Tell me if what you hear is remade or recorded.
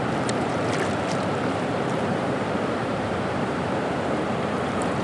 remade